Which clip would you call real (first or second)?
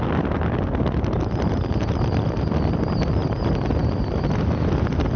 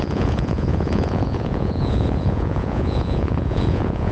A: first